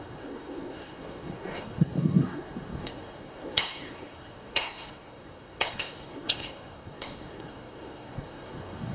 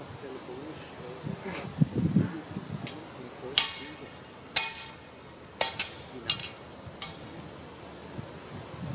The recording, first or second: second